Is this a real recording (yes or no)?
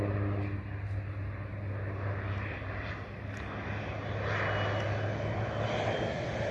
yes